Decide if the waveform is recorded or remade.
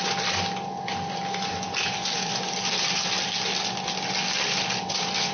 recorded